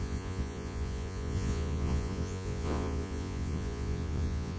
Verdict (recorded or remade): remade